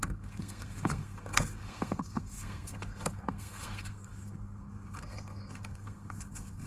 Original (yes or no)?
no